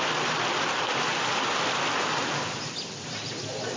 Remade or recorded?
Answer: recorded